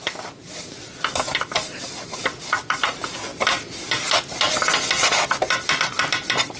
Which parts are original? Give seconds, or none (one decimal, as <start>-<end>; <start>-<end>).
0.0-6.6